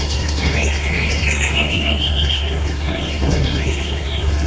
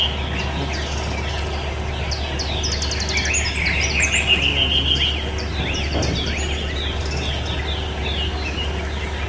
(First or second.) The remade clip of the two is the first